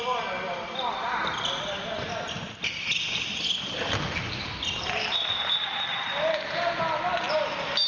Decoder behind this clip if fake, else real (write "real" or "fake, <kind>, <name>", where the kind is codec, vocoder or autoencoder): real